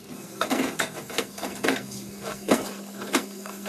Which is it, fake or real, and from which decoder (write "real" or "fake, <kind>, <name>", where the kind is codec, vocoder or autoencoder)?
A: fake, codec, SNAC